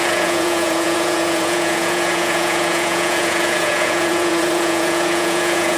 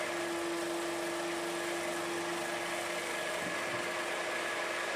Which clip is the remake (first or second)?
first